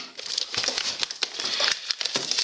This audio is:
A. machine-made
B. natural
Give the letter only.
A